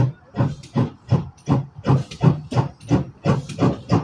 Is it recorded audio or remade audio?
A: recorded